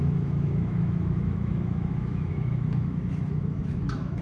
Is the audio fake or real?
fake